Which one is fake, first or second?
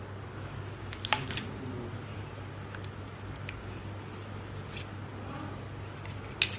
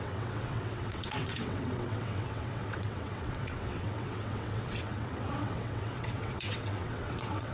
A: second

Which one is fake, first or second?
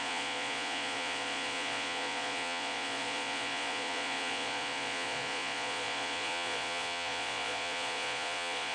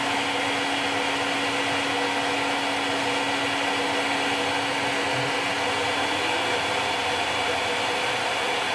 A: first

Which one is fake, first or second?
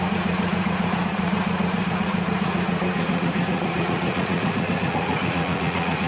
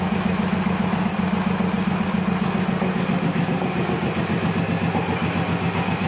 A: first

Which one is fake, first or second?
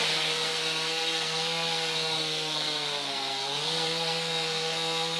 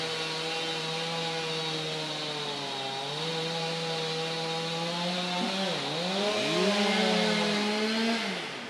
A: first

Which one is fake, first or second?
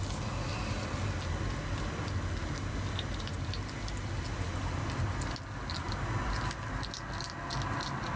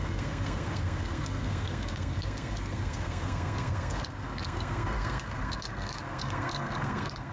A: second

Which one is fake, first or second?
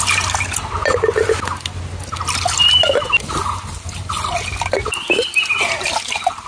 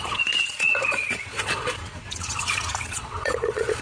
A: second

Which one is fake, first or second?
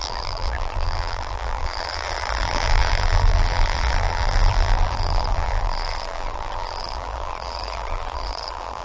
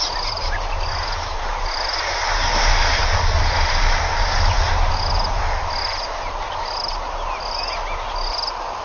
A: first